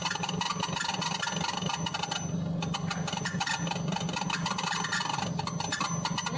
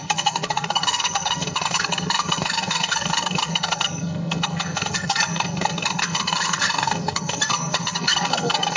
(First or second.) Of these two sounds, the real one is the first